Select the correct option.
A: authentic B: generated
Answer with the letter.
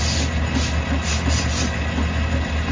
A